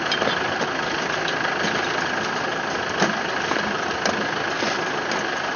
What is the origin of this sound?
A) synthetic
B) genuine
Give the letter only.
B